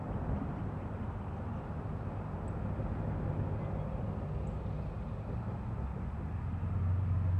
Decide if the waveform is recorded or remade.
recorded